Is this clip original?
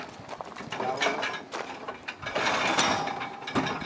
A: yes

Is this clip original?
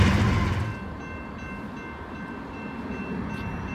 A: yes